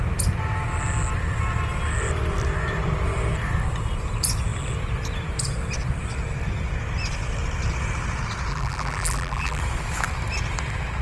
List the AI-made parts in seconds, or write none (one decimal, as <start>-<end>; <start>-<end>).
8.5-9.6

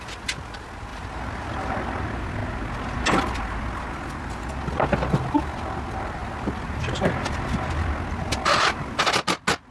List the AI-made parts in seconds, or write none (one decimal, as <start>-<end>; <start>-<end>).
0.9-2.0